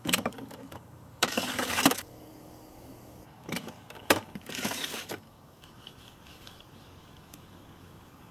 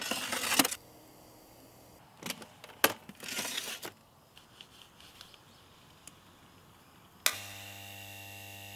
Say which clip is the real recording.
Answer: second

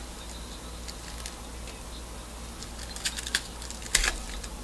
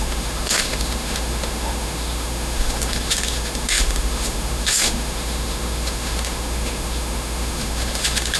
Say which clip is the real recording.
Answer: first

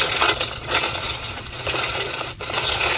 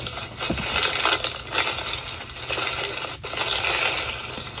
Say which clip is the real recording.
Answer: second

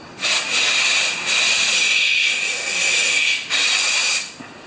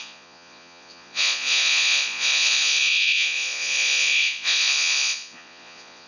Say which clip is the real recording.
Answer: first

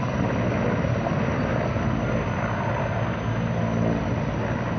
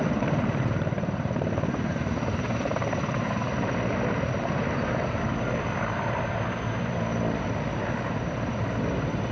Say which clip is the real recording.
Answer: first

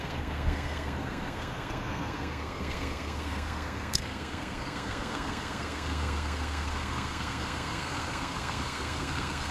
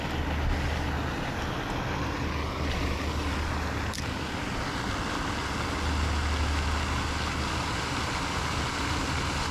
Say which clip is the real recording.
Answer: second